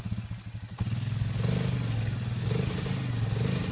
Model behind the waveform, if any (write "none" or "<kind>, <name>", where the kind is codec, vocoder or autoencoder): none